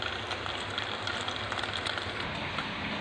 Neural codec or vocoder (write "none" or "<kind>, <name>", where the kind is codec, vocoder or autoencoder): none